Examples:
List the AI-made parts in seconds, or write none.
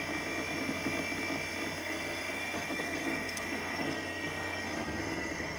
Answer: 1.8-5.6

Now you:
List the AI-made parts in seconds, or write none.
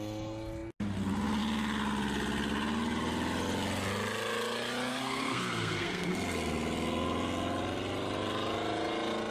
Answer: 4.9-6.1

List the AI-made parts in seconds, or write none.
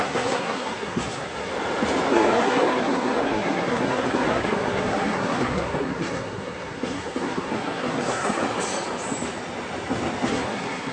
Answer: 0.0-1.5; 2.1-8.4; 10.3-10.9